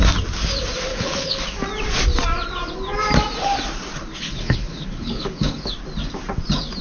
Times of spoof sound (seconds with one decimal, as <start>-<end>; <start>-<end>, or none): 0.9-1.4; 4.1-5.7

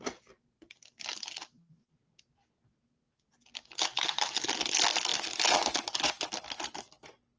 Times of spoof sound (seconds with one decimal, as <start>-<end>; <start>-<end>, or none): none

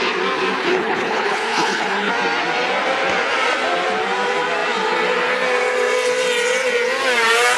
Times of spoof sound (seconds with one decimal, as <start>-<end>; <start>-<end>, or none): 0.6-2.1